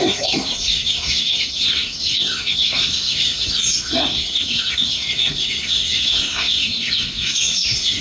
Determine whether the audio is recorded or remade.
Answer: remade